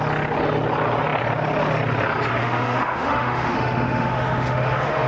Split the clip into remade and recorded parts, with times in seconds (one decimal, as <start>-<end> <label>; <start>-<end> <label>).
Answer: 0.0-2.4 recorded; 2.4-5.1 remade